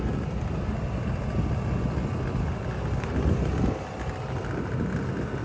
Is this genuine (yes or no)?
yes